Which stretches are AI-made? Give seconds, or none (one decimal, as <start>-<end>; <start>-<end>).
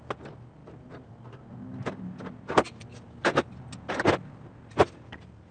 none